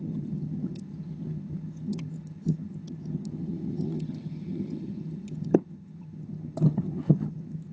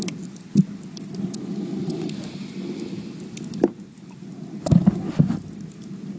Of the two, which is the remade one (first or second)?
first